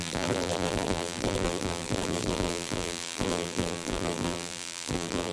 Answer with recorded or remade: remade